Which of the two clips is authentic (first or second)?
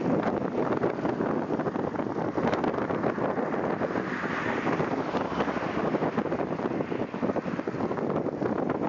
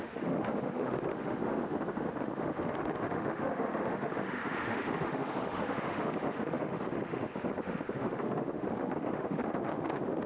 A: first